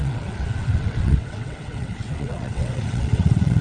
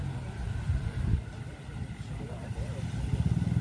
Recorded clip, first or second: second